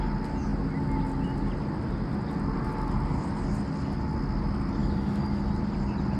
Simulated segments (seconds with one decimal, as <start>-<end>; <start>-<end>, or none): 4.8-5.4